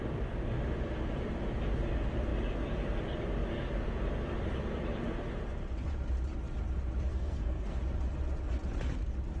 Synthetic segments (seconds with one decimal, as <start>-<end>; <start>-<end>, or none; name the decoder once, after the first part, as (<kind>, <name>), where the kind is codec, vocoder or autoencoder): 7.1-7.8 (codec, SNAC)